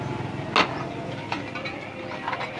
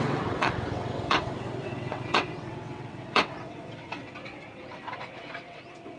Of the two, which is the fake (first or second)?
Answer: second